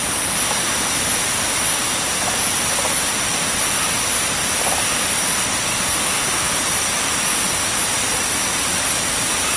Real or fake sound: real